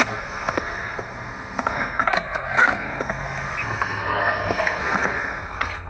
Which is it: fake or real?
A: fake